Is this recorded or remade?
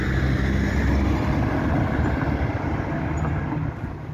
recorded